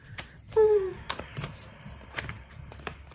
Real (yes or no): no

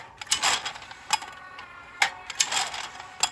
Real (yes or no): yes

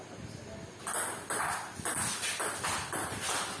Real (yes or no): yes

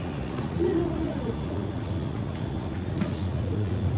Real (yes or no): no